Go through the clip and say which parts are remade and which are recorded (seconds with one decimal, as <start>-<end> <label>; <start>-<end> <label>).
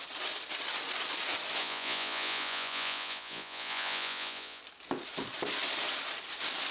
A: 0.0-1.6 recorded; 1.6-4.6 remade; 4.6-6.7 recorded